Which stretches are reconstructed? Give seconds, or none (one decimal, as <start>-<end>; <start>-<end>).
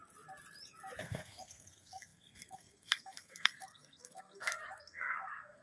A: 1.0-5.6